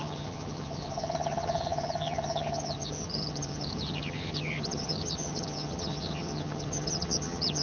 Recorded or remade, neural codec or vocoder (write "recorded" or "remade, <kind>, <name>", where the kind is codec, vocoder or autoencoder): remade, vocoder, HiFi-GAN